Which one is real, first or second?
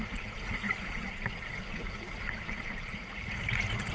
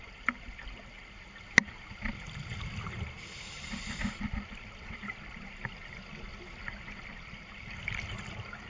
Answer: second